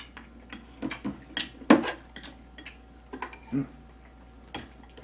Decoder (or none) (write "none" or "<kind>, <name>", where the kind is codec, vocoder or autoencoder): none